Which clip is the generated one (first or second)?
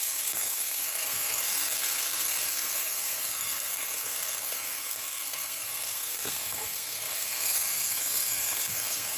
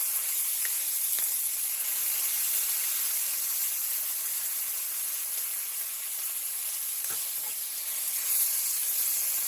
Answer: first